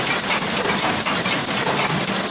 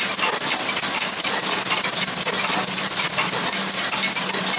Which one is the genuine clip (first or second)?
first